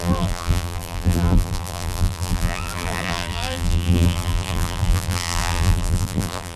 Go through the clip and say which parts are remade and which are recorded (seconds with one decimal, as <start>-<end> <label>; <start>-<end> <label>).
0.0-6.6 remade